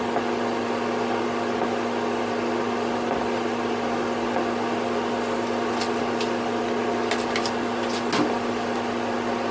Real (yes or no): yes